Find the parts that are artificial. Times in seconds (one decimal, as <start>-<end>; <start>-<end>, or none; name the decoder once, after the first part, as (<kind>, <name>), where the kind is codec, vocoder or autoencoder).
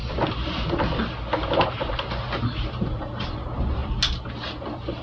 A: none